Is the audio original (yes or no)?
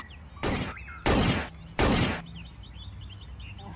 yes